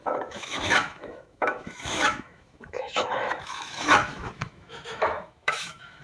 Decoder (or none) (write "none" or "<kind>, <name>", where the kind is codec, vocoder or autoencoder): autoencoder, DAC-VAE